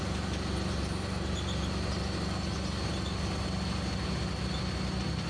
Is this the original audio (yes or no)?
yes